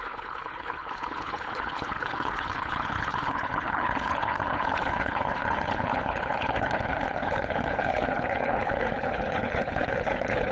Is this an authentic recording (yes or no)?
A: no